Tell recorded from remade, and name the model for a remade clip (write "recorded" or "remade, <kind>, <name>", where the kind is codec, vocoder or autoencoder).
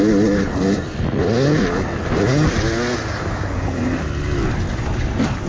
recorded